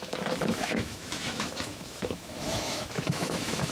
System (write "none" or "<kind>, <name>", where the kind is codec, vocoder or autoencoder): autoencoder, DAC-VAE